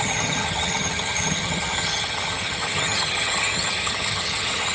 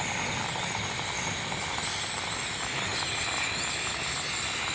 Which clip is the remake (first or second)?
first